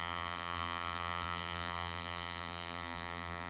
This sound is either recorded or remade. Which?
remade